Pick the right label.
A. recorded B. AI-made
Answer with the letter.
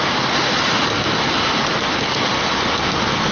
A